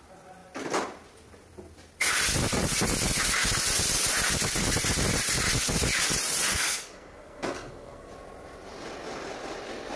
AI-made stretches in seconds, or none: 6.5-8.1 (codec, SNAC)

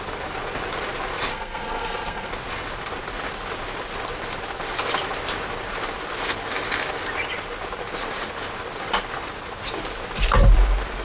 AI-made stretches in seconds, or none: 1.3-2.3 (codec, SNAC)

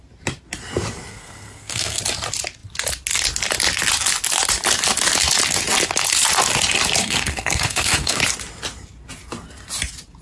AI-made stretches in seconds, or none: 1.1-2.0 (codec, SNAC); 7.0-8.2

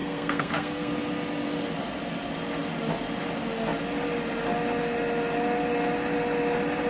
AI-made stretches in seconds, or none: 0.0-0.9 (codec, SNAC)

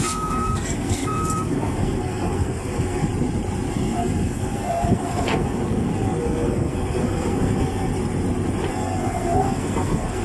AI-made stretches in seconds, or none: 0.0-3.1 (codec, SNAC); 3.7-7.9; 8.7-10.2